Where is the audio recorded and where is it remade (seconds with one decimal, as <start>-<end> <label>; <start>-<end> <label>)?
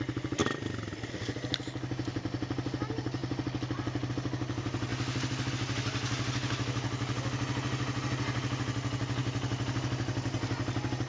0.0-11.1 recorded